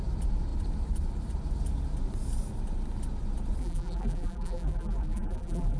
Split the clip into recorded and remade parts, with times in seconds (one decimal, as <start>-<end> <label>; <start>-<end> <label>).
0.0-3.6 recorded; 3.6-5.8 remade